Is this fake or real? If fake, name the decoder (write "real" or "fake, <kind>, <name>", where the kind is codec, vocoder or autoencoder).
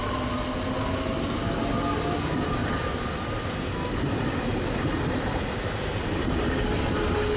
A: real